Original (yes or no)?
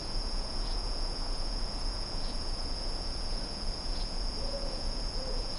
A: no